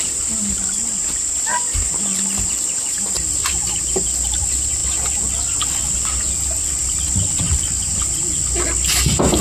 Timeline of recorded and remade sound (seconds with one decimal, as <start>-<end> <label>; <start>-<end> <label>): 0.0-9.4 recorded